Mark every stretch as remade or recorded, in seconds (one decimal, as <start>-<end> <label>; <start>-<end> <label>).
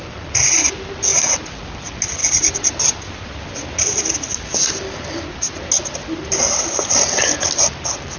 0.0-2.2 recorded; 2.2-3.4 remade; 3.4-8.2 recorded